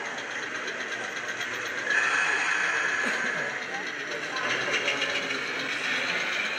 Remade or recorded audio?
recorded